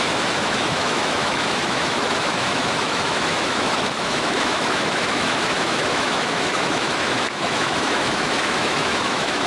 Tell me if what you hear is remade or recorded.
remade